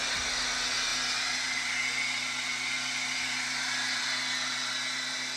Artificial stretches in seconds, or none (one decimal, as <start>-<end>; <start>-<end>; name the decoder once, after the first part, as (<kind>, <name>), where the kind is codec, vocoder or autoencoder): none